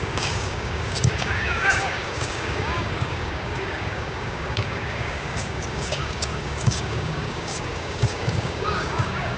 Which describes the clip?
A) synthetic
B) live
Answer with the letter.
A